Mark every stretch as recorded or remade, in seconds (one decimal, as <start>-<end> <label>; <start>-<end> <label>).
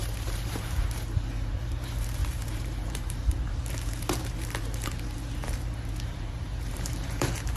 0.0-7.6 remade